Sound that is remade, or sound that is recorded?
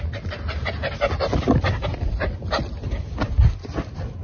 recorded